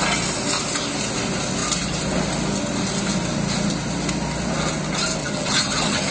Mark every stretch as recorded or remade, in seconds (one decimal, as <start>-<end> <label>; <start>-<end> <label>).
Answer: 0.0-5.2 recorded; 5.2-6.1 remade